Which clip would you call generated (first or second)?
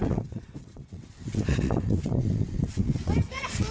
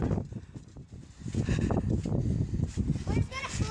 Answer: first